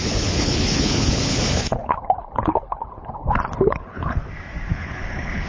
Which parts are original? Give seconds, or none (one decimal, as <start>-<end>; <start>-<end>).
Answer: 4.2-4.7